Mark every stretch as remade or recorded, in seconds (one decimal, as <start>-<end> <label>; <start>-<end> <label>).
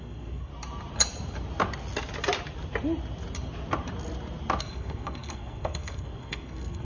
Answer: 0.0-0.5 remade; 0.5-4.6 recorded; 4.6-6.8 remade